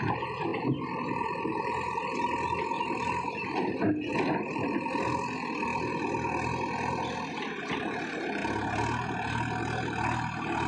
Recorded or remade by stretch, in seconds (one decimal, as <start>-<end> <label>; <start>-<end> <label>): 0.0-0.5 recorded; 0.5-2.0 remade; 2.0-10.7 recorded